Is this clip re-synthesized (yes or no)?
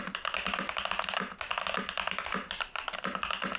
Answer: no